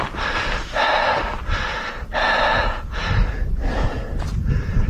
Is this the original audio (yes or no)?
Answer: yes